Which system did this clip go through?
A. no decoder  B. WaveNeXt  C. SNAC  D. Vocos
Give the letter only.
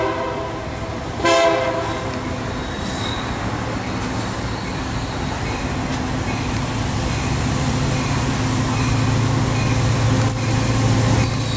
A